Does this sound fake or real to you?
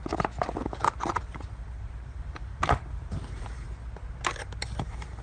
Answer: real